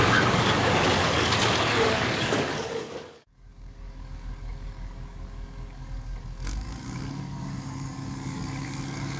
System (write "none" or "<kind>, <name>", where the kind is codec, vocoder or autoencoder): codec, DAC